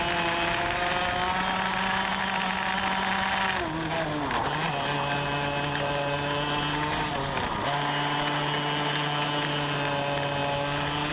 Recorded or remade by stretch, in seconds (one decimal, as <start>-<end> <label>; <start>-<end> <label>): 0.0-11.1 recorded